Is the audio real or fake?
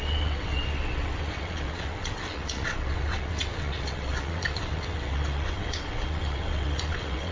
fake